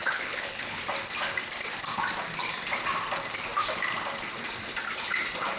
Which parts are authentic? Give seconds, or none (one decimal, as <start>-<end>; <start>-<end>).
0.8-5.6